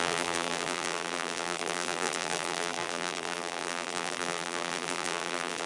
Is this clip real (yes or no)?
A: no